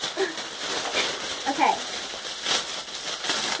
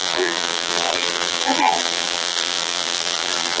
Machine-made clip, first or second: second